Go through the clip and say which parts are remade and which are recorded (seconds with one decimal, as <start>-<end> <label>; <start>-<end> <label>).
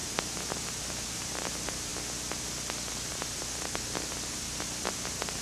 0.0-1.9 remade; 1.9-2.9 recorded; 2.9-5.4 remade